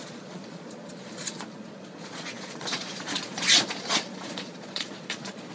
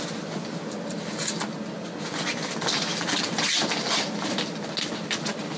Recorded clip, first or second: second